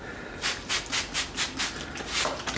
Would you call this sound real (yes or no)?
yes